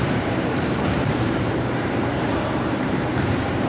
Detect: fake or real fake